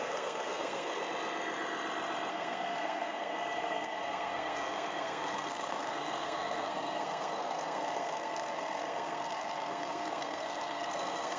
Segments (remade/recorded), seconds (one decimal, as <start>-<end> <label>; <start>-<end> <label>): 0.0-1.0 remade; 1.0-2.3 recorded; 2.3-11.4 remade